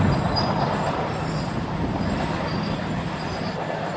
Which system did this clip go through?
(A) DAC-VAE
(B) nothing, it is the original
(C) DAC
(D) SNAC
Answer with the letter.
B